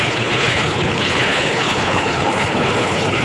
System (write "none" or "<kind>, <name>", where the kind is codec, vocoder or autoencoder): codec, HILCodec